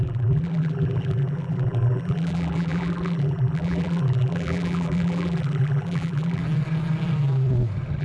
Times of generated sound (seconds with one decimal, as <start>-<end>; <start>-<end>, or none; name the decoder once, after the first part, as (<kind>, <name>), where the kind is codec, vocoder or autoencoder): 0.0-6.4 (vocoder, BigVGAN v2)